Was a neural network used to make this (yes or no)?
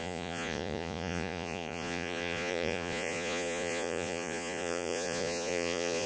yes